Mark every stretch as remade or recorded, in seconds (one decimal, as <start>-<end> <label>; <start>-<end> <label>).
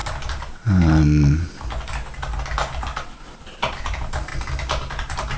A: 0.0-3.2 recorded; 3.2-4.3 remade; 4.3-4.9 recorded; 4.9-5.4 remade